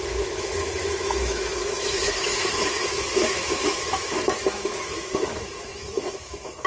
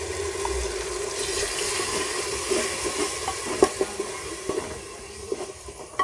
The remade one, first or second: first